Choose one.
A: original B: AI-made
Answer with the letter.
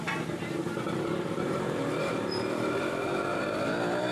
B